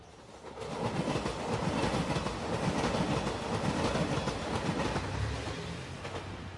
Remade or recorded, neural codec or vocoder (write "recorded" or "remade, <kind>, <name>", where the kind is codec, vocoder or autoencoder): recorded